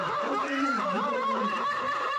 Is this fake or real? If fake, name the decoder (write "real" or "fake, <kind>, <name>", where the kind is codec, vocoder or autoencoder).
fake, vocoder, BigVGAN v2